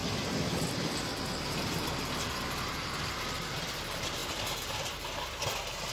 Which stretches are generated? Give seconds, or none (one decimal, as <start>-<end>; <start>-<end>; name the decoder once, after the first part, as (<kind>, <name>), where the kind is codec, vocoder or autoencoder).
none